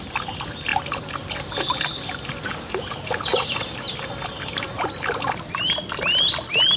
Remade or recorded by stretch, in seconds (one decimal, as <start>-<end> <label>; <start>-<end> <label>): 0.0-6.8 recorded